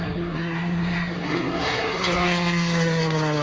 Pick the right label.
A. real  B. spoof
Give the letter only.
B